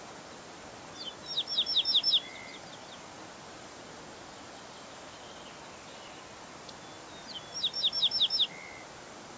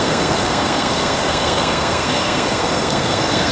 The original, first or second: first